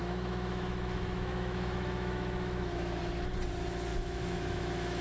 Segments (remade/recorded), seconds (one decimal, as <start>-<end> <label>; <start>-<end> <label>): 0.0-3.0 remade; 3.0-3.9 recorded; 3.9-5.0 remade